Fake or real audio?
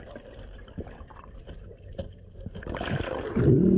real